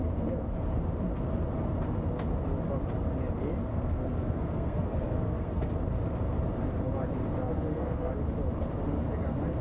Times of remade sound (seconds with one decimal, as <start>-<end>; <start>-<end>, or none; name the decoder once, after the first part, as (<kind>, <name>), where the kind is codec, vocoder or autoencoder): 3.7-5.7 (codec, SNAC); 7.5-8.1